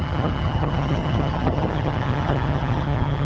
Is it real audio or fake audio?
fake